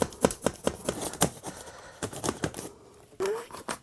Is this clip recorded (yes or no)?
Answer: no